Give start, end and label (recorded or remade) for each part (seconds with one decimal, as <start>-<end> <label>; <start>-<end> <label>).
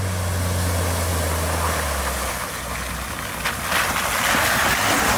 0.0-5.2 recorded